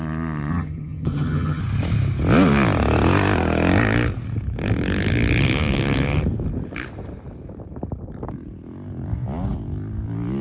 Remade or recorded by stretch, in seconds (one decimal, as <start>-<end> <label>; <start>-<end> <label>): 0.0-0.5 recorded; 0.5-1.6 remade; 1.6-10.4 recorded